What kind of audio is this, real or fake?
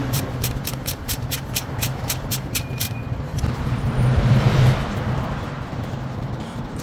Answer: fake